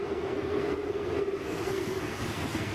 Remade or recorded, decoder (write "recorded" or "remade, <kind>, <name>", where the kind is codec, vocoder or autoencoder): remade, codec, SNAC